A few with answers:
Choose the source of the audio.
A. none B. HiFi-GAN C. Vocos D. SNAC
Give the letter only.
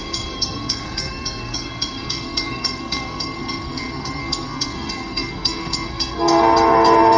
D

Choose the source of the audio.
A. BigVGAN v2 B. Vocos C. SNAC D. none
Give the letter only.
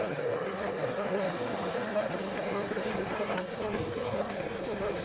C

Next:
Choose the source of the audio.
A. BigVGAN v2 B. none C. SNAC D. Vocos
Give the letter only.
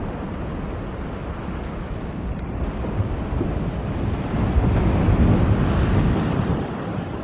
B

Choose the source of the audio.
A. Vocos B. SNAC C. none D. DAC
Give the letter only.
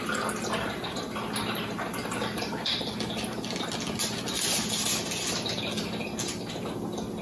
C